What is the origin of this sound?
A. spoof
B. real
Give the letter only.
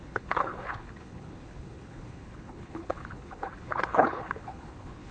A